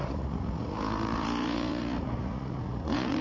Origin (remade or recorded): remade